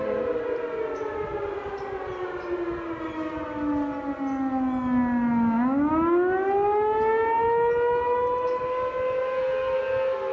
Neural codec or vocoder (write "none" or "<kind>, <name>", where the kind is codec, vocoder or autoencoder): none